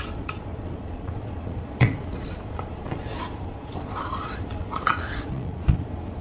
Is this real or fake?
fake